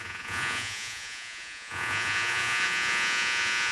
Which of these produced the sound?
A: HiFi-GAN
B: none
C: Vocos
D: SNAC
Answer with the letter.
C